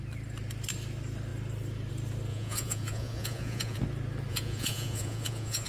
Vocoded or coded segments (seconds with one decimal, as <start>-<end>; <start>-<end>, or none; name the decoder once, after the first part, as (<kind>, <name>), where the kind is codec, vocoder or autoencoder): 2.3-3.8 (vocoder, Vocos); 4.3-5.7